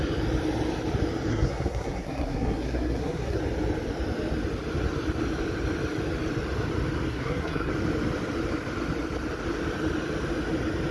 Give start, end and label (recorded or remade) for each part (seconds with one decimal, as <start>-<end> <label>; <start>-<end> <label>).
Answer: 0.0-1.3 recorded; 1.3-3.4 remade; 3.4-7.1 recorded; 7.1-7.7 remade; 7.7-10.9 recorded

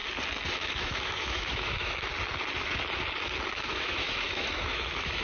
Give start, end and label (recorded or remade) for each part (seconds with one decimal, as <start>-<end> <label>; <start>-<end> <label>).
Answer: 0.0-0.5 recorded; 0.5-2.1 remade; 2.1-3.7 recorded; 3.7-5.2 remade

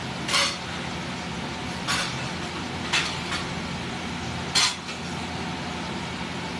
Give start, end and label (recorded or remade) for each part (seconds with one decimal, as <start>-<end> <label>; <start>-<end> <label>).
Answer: 0.0-6.6 recorded

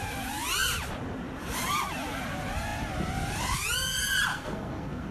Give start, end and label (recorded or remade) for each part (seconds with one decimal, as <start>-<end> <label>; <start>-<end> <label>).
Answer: 0.0-4.3 recorded; 4.3-5.1 remade

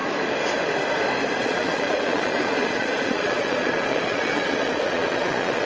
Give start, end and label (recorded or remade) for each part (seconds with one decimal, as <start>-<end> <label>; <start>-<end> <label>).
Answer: 0.0-1.4 recorded; 1.4-5.7 remade

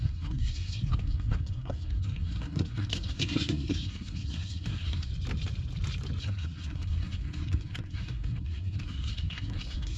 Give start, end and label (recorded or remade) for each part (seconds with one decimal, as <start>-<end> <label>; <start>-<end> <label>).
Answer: 0.0-5.1 remade; 5.1-6.2 recorded; 6.2-10.0 remade

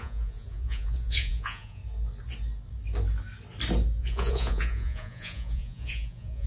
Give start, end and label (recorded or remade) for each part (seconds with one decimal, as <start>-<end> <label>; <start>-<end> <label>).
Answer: 0.0-1.8 remade; 1.8-4.0 recorded; 4.0-6.5 remade

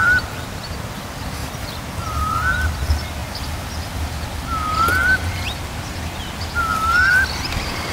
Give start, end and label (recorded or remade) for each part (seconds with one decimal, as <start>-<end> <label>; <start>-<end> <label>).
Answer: 0.0-1.4 recorded; 1.4-1.9 remade; 1.9-7.9 recorded